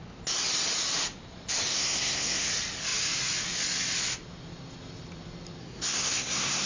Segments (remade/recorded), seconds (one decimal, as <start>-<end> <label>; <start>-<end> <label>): 0.0-1.7 recorded; 1.7-2.5 remade; 2.5-5.6 recorded; 5.6-6.7 remade